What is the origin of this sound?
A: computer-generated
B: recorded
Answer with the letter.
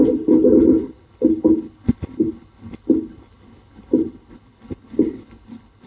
A